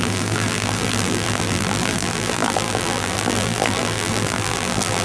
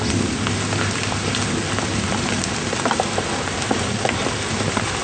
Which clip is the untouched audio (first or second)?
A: second